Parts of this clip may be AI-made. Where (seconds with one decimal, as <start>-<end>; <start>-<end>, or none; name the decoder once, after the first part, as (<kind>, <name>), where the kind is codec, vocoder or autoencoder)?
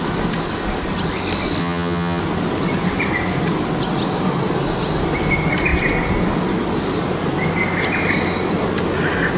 1.6-2.2 (vocoder, HiFi-GAN)